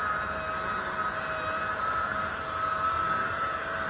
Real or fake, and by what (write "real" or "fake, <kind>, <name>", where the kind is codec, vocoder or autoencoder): real